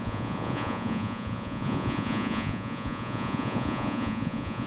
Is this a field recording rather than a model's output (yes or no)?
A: no